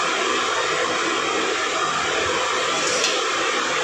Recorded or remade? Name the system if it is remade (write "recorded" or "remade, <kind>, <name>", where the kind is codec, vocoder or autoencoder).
recorded